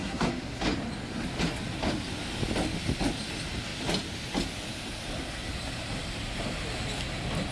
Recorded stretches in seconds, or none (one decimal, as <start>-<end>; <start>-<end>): 0.6-7.5